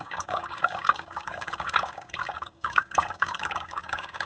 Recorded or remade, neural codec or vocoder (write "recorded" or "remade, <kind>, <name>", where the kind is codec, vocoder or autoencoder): remade, codec, DAC